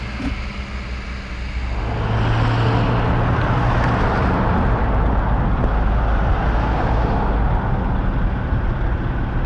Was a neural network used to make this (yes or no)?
no